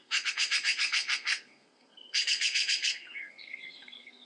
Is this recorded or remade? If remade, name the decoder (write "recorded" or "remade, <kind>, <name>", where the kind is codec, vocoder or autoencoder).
remade, codec, SNAC